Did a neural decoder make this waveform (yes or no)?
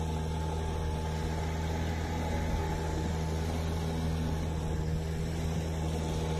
no